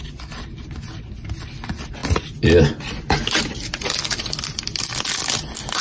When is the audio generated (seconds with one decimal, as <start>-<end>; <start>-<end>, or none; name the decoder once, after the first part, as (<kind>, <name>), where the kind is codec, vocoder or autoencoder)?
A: none